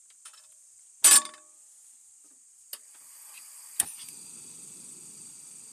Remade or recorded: recorded